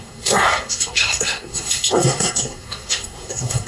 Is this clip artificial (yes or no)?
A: yes